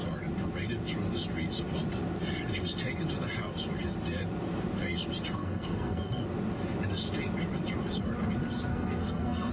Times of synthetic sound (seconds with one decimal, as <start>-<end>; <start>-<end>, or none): 5.4-6.2; 8.7-9.5